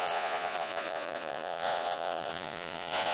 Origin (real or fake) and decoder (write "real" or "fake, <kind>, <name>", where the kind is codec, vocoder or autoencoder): fake, vocoder, Vocos